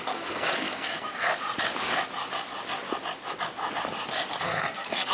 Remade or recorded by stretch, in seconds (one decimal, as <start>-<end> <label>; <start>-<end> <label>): 0.0-1.3 remade; 1.3-4.4 recorded; 4.4-5.1 remade